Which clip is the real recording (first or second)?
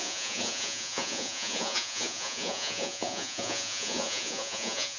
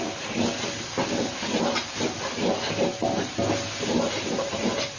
second